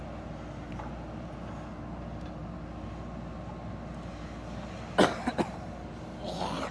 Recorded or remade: recorded